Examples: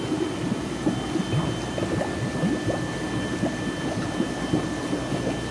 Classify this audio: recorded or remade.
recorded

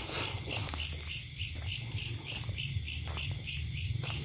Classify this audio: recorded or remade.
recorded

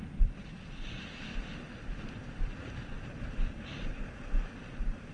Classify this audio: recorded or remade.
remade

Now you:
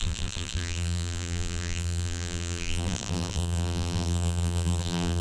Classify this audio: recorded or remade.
remade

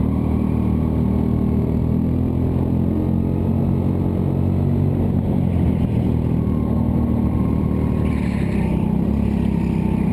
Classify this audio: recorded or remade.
recorded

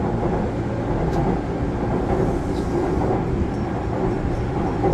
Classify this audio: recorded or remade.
recorded